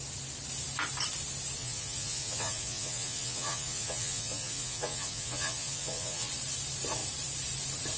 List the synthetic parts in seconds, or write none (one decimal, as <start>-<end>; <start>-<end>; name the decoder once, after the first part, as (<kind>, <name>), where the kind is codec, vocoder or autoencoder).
1.6-6.3 (vocoder, Vocos)